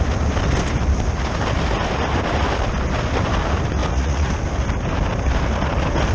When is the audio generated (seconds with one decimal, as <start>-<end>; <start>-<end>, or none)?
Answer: 3.8-4.3